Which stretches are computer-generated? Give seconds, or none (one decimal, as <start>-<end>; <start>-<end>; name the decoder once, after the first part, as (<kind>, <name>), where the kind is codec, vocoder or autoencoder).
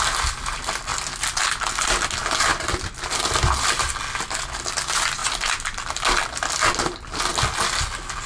2.5-3.9 (vocoder, BigVGAN v2)